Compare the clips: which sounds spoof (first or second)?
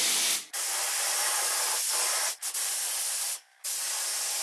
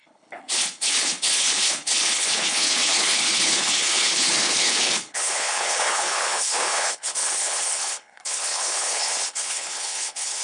second